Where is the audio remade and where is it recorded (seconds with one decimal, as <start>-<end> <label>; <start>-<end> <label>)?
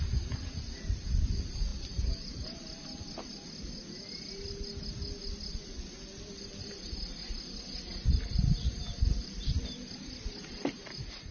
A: 0.0-11.3 recorded